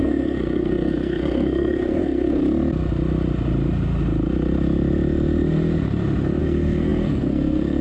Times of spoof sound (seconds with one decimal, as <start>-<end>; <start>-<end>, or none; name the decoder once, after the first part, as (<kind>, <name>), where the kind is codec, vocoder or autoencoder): 0.0-2.4 (codec, SNAC); 6.4-7.8